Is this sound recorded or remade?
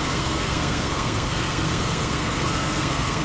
remade